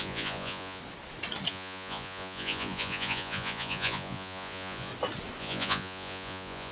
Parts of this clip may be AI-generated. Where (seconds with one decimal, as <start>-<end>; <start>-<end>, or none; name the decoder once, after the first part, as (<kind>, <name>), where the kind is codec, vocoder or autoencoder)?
0.0-0.8 (vocoder, Vocos); 1.5-4.9; 5.4-6.7

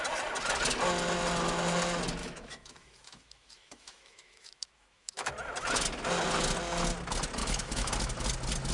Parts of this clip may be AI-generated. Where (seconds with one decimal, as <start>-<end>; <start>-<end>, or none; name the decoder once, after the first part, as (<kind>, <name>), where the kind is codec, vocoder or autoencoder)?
2.2-5.3 (autoencoder, DAC-VAE); 7.4-7.9

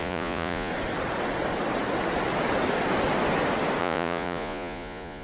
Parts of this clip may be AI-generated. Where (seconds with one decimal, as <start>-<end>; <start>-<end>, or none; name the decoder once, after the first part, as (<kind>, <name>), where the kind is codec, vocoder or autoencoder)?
0.0-0.7 (vocoder, Vocos); 3.8-5.2

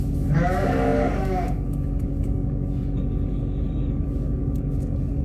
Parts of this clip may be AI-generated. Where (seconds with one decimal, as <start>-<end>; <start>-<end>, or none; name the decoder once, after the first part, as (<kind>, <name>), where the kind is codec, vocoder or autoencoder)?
0.0-5.2 (codec, DAC)